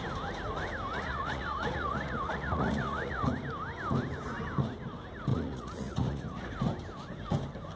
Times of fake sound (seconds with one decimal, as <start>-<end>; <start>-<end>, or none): 0.9-3.3; 5.3-6.5